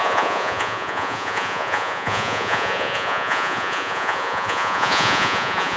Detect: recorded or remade remade